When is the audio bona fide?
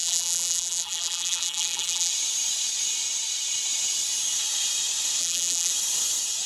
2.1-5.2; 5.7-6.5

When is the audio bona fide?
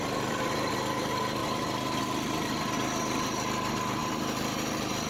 0.0-1.4; 2.0-4.0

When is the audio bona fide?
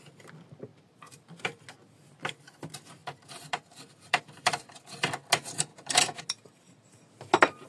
0.0-0.7; 1.6-3.0; 4.8-5.7; 6.2-7.7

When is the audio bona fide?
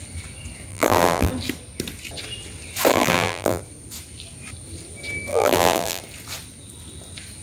0.0-0.7; 1.3-2.9; 3.6-5.3; 6.0-7.4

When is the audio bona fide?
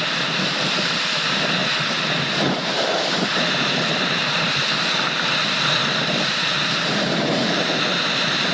1.6-2.1; 5.8-6.6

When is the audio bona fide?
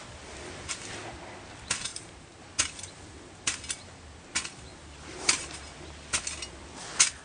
0.0-1.9; 2.4-4.7; 5.6-7.2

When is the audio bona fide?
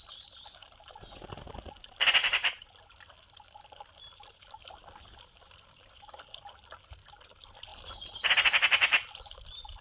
0.0-2.2; 3.9-9.8